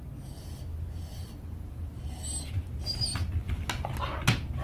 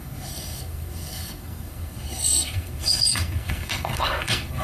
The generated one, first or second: second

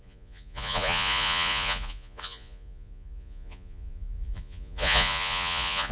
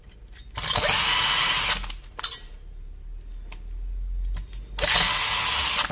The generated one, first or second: first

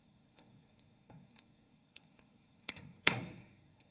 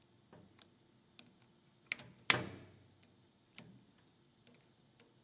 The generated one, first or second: first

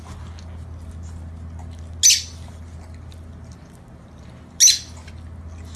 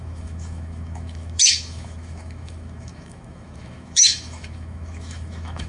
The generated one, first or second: second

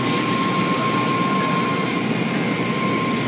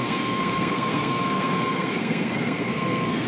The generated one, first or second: second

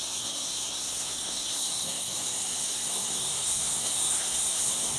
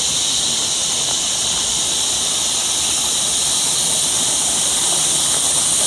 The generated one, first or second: first